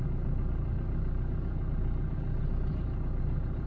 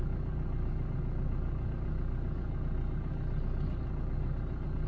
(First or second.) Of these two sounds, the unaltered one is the second